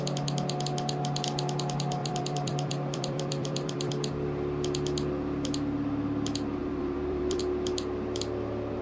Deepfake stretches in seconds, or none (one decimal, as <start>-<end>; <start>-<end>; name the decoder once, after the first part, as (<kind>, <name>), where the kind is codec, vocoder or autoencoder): 2.0-3.9 (vocoder, BigVGAN v2); 6.6-7.4